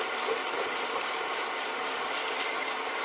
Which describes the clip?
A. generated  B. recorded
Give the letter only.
B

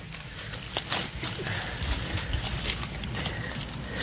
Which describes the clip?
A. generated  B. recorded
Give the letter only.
B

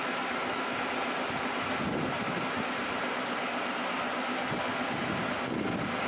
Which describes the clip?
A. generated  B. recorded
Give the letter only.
B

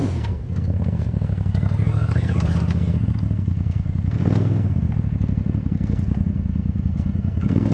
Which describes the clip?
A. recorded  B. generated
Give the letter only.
B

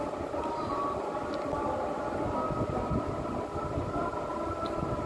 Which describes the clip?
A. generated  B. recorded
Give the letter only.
B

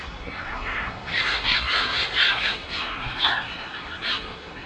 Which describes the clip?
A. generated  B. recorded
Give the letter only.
A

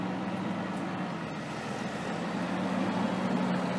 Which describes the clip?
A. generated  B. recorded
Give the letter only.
B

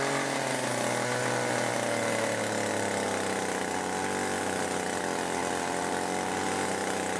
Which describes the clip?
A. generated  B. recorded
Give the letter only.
B